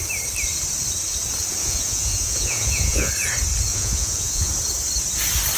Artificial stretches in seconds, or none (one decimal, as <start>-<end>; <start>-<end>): 1.6-3.1; 3.7-4.5